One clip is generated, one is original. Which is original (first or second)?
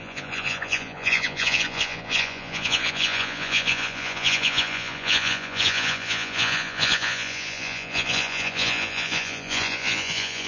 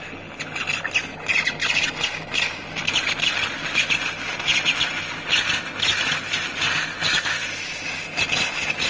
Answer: second